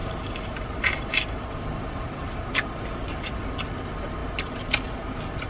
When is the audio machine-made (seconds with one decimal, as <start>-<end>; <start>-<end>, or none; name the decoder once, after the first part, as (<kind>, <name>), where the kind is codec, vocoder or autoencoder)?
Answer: 0.0-3.3 (vocoder, BigVGAN v2)